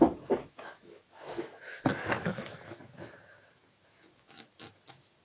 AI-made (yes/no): yes